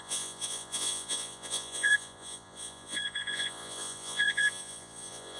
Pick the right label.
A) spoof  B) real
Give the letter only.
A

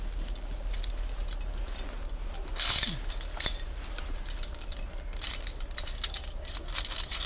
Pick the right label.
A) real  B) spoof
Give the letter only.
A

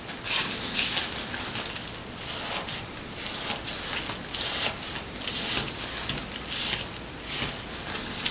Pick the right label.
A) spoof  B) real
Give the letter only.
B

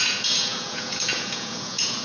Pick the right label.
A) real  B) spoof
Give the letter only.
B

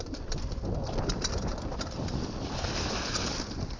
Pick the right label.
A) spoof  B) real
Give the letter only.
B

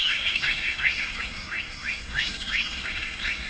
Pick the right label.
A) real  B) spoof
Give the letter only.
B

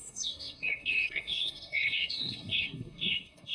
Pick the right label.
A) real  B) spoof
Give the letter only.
B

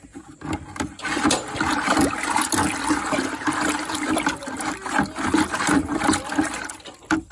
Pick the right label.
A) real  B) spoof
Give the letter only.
A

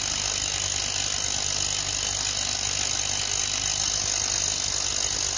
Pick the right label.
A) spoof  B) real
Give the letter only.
B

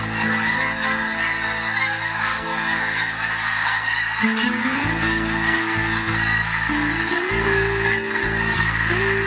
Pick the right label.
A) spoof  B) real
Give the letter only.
A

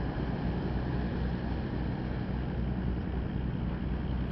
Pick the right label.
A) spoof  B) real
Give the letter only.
B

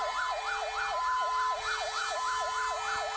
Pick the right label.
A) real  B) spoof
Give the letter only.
A